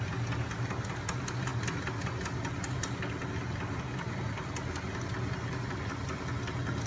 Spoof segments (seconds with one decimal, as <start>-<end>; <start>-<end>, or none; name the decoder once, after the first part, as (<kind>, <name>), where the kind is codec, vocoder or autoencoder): none

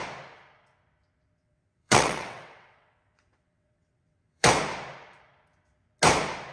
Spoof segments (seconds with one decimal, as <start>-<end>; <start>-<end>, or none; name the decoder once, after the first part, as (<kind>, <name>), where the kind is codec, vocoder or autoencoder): 1.4-4.5 (vocoder, WaveNeXt)